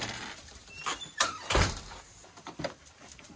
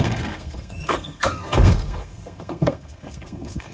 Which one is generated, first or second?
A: second